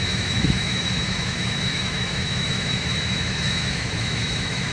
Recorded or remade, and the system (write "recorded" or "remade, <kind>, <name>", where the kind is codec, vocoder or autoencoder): remade, autoencoder, DAC-VAE